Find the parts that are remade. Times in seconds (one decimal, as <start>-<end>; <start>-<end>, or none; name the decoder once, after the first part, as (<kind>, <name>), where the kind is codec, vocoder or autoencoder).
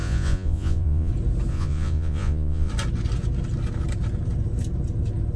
0.0-1.1 (vocoder, Vocos); 1.5-2.7